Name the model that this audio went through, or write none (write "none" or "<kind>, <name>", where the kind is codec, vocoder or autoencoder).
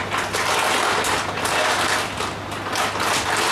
none